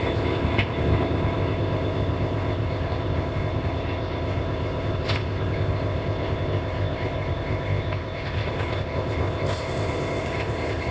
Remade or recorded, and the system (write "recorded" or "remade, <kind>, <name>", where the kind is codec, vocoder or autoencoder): remade, codec, ZipCodec